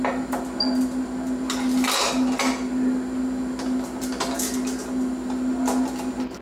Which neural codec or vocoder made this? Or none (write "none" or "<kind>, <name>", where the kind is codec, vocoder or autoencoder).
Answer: none